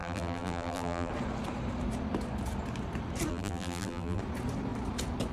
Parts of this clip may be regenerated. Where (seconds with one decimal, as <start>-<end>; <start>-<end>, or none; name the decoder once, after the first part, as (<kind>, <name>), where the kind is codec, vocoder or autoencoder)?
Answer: 0.0-1.1 (vocoder, BigVGAN v2); 3.3-4.2